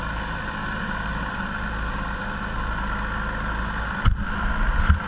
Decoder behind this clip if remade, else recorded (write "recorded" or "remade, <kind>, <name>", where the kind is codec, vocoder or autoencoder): recorded